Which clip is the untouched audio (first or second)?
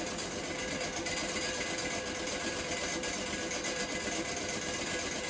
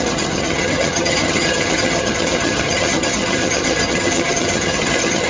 first